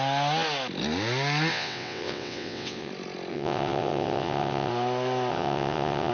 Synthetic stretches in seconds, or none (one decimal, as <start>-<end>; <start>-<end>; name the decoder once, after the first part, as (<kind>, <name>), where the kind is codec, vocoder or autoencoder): 1.5-2.9 (vocoder, WaveNeXt); 3.3-4.7; 5.3-6.1

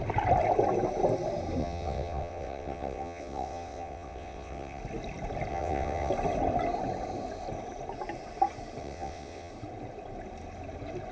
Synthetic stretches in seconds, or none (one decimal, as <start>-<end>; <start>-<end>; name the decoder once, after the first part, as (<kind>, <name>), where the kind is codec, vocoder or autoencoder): 1.6-4.8 (vocoder, WaveNeXt); 5.5-6.1; 8.8-9.5

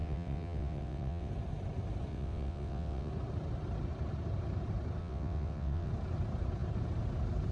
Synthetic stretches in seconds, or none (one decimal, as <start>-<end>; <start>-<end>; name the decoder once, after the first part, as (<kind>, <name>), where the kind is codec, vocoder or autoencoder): 0.0-1.3 (vocoder, WaveNeXt); 2.1-3.1; 5.0-5.9

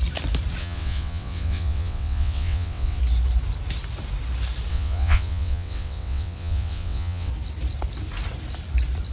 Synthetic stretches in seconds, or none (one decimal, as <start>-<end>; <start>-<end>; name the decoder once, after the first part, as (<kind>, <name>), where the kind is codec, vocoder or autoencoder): 0.6-3.0 (vocoder, WaveNeXt); 4.7-7.3

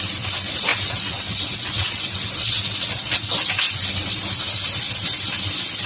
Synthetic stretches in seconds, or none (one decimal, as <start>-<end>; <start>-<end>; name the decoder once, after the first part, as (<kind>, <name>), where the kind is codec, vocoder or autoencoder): 0.7-3.3 (vocoder, WaveNeXt)